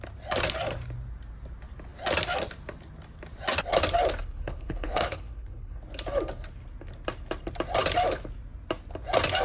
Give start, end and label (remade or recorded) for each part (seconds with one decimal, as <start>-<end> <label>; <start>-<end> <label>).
0.0-4.2 recorded; 4.2-5.8 remade; 5.8-9.4 recorded